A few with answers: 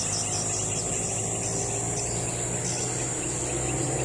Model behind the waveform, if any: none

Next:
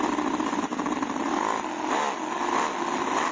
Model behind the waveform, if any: none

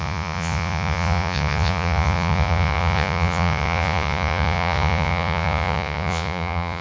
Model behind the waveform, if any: vocoder, Vocos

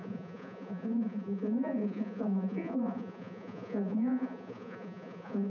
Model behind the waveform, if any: vocoder, Vocos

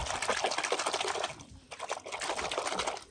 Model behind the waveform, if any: none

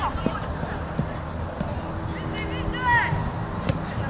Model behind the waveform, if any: none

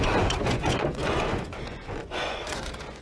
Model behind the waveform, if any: vocoder, Vocos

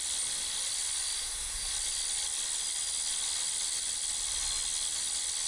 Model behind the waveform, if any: none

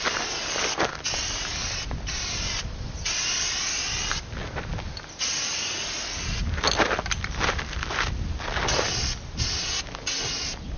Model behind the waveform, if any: none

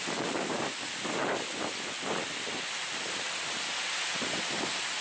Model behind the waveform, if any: none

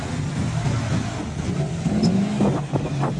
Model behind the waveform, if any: none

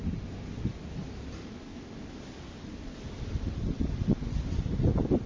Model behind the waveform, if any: none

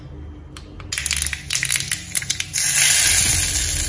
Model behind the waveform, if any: none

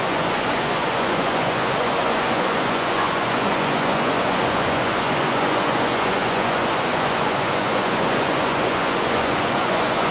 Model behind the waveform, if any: vocoder, Vocos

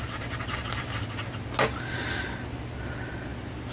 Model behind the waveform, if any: none